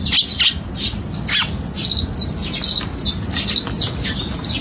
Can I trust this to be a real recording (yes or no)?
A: yes